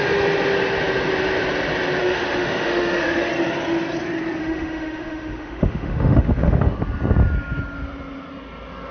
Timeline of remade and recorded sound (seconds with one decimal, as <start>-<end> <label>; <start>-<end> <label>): 0.0-2.0 recorded; 2.0-3.3 remade; 3.3-4.4 recorded; 4.4-6.7 remade; 6.7-8.9 recorded